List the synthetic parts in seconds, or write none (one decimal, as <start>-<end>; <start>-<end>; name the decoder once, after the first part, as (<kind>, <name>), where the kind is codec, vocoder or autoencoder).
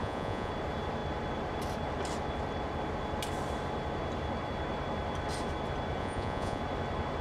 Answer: 0.0-0.5 (vocoder, Vocos); 6.0-6.6